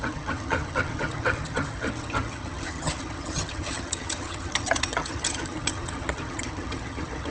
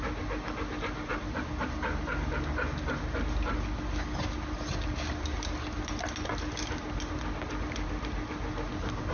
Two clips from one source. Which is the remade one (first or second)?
first